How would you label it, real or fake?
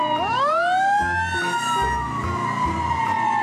real